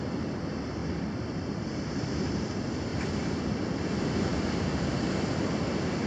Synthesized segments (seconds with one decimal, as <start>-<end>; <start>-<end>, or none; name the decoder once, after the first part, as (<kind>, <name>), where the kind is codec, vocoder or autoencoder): 0.8-1.7 (vocoder, BigVGAN v2)